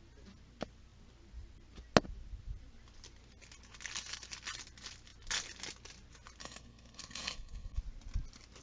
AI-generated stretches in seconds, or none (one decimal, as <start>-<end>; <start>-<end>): 6.4-7.8